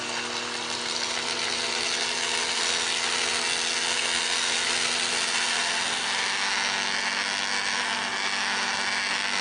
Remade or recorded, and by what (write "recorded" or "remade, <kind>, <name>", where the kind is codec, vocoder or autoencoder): recorded